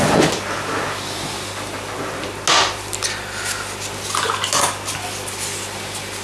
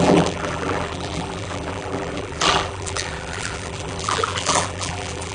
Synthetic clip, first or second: second